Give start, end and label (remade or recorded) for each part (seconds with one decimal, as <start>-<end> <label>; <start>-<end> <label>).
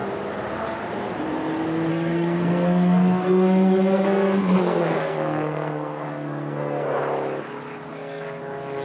0.0-1.9 recorded; 1.9-7.0 remade; 7.0-7.9 recorded; 7.9-8.4 remade; 8.4-8.8 recorded